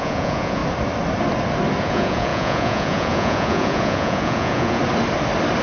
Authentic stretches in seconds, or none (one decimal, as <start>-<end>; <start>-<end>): 0.6-1.8; 4.8-5.6